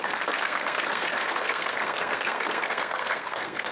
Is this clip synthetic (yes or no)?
yes